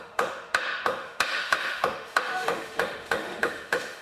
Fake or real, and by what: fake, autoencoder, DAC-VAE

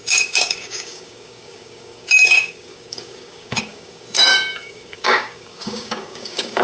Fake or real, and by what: fake, codec, DAC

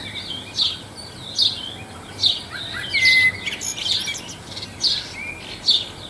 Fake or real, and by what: real